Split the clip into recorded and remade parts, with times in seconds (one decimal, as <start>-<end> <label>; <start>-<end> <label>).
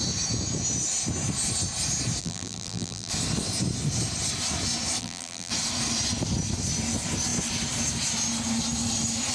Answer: 0.0-2.2 recorded; 2.2-3.1 remade; 3.1-5.0 recorded; 5.0-5.5 remade; 5.5-9.3 recorded